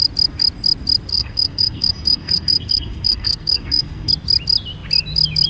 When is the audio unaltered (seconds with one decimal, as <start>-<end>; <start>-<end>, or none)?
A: 0.0-1.1; 4.1-5.5